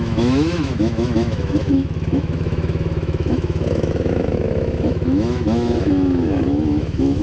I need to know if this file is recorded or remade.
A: remade